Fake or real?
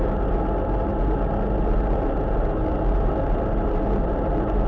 real